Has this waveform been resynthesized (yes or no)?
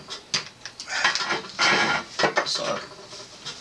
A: no